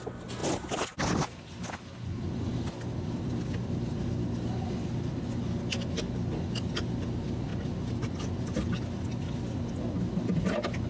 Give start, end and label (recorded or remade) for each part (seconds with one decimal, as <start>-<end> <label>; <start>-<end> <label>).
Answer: 0.0-10.9 recorded